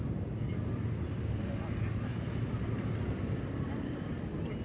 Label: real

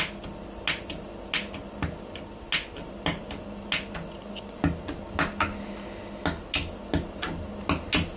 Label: real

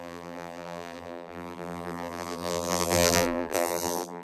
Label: fake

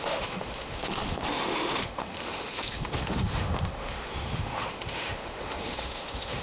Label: fake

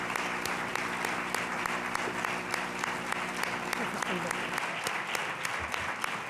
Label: real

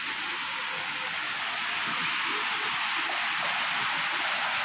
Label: real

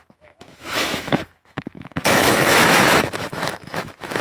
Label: fake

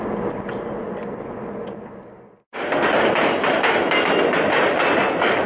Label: real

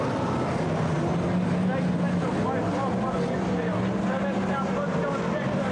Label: real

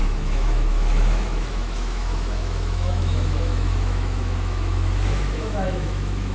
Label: fake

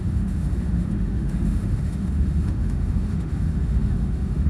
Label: fake